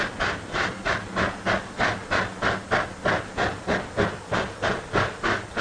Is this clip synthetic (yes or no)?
no